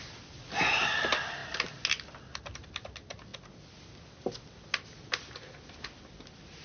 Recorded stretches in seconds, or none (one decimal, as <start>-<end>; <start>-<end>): 0.0-6.6